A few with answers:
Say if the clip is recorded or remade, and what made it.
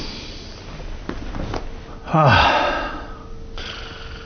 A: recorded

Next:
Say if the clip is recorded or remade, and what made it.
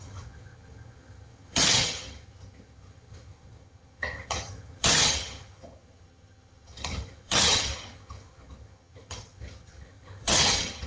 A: remade, vocoder, HiFi-GAN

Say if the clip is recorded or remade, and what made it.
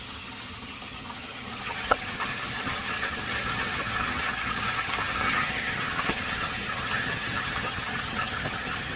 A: remade, vocoder, HiFi-GAN